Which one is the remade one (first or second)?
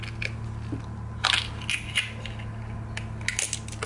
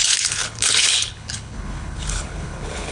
second